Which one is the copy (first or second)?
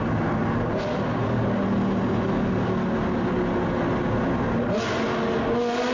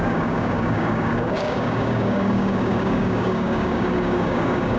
second